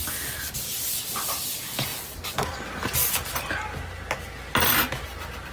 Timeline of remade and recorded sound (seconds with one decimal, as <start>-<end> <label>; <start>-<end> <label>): 0.0-5.5 recorded